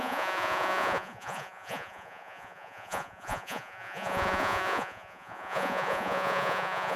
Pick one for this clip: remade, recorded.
remade